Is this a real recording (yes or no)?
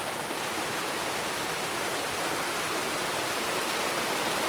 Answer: yes